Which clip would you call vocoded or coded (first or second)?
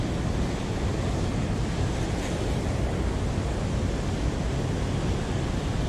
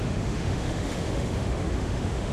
second